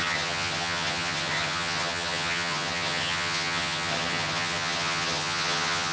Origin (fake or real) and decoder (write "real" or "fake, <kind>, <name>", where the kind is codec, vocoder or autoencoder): fake, vocoder, HiFi-GAN